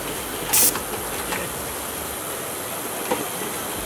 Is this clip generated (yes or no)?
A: no